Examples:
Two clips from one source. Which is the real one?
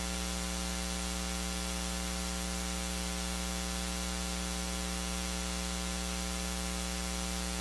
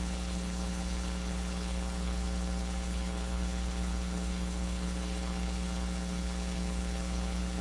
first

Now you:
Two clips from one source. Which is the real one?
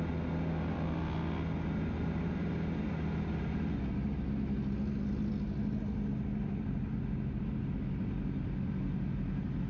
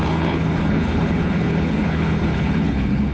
first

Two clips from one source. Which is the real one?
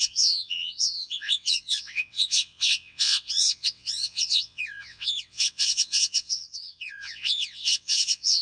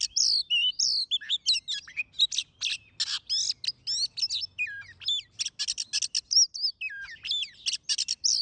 second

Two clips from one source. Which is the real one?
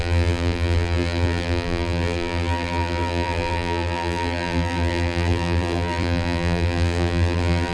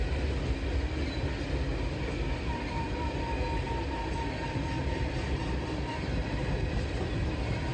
second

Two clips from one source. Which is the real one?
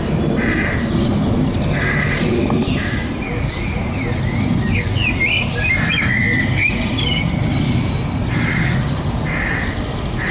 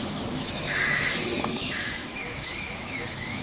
first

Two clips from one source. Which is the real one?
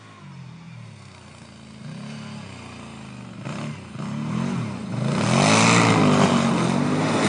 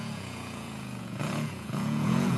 first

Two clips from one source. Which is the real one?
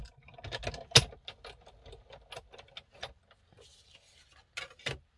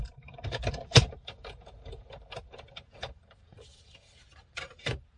first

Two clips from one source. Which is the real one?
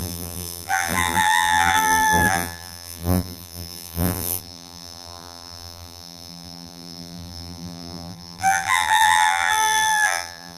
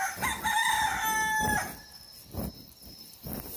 second